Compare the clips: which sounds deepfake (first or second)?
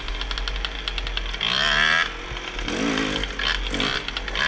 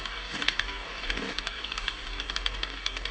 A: second